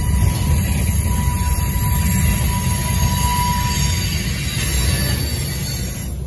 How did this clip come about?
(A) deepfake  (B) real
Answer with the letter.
B